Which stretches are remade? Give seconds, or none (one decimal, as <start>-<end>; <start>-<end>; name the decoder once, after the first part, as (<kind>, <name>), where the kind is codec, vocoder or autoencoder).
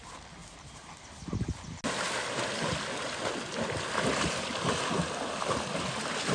none